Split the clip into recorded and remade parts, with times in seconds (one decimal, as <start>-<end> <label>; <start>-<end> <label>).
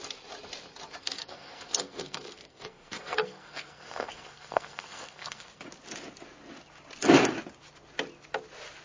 0.0-1.0 recorded; 1.0-5.6 remade; 5.6-8.8 recorded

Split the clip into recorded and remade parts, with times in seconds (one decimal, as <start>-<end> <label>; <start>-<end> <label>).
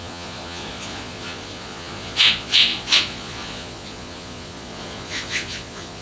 0.0-6.0 remade